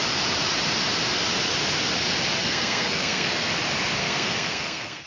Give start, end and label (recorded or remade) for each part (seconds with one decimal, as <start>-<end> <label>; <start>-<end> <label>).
0.0-2.4 recorded; 2.4-3.5 remade; 3.5-4.0 recorded; 4.0-5.1 remade